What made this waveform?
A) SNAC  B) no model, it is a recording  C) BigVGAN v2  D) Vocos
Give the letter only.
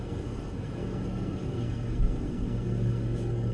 A